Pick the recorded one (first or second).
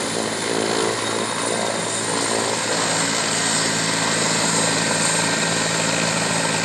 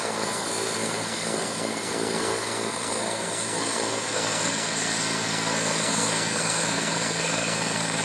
first